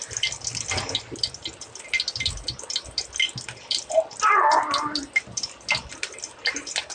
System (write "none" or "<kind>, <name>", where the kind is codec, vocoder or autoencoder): none